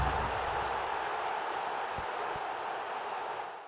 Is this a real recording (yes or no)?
yes